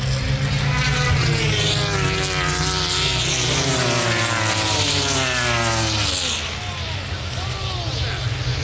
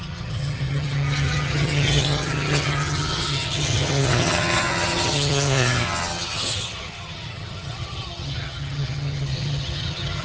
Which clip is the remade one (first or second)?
second